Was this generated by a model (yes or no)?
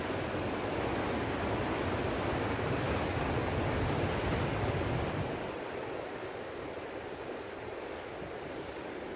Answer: no